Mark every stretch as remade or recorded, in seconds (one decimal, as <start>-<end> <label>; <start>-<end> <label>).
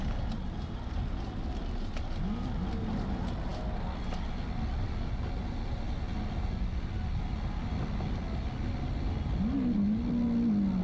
0.0-10.8 recorded